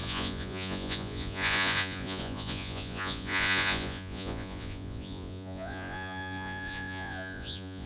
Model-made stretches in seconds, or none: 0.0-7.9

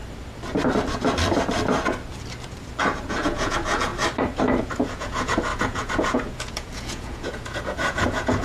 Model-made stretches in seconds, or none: 3.1-3.9; 4.6-8.4

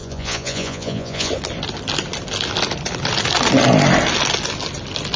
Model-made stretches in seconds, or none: 0.0-1.3

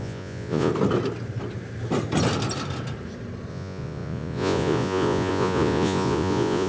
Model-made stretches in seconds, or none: 0.0-0.7; 3.5-6.7

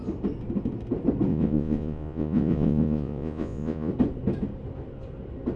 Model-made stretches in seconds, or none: 1.3-3.9

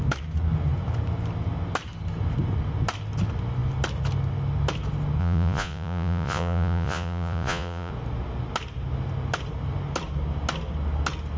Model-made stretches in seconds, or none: 5.2-7.9

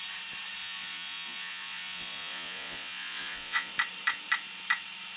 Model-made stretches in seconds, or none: 0.6-3.7